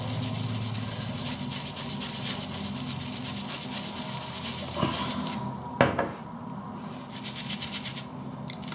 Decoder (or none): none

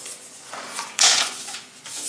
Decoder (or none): vocoder, Vocos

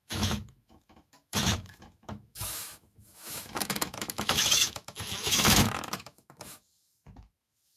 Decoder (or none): autoencoder, DAC-VAE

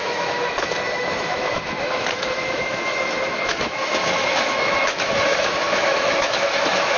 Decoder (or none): autoencoder, DAC-VAE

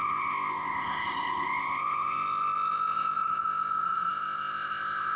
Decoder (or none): codec, ZipCodec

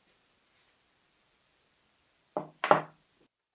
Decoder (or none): none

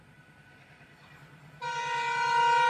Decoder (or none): none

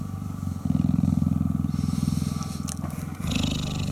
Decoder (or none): none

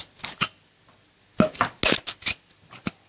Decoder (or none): none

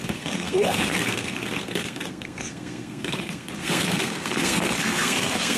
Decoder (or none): codec, SNAC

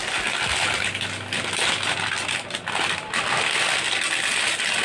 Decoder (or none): none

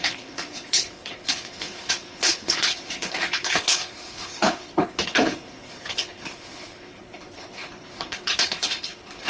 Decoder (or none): codec, HILCodec